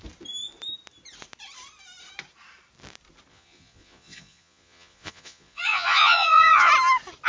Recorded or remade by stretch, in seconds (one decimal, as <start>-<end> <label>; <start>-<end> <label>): 0.0-3.3 recorded; 3.3-6.7 remade; 6.7-7.3 recorded